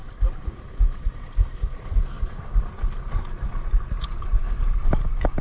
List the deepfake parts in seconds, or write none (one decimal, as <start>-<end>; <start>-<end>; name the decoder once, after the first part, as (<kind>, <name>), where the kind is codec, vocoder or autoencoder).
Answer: none